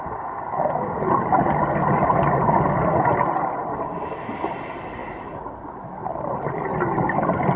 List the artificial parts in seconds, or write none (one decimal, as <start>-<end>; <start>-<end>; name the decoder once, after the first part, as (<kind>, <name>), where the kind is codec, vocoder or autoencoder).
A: none